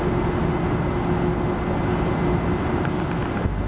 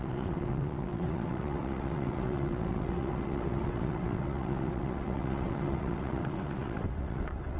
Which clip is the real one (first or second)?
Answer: first